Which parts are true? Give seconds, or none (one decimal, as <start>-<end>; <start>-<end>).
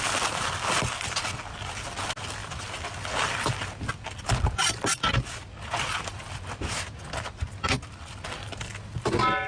0.0-9.5